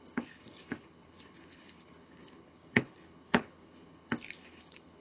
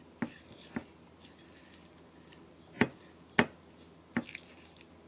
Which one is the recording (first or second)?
second